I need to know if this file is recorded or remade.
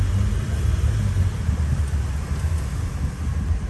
recorded